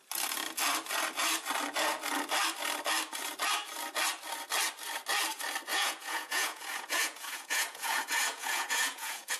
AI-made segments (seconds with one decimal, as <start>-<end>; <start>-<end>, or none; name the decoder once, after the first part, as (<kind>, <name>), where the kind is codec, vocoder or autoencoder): 5.7-9.4 (vocoder, Vocos)